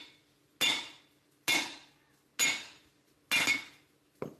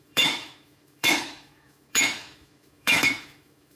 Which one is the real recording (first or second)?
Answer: first